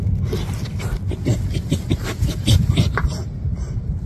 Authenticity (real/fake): real